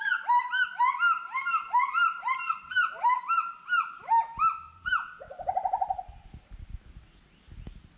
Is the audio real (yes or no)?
yes